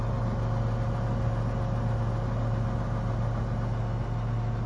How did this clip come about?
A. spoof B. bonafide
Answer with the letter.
B